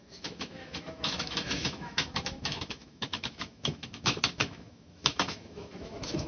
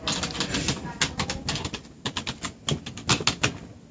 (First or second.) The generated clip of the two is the first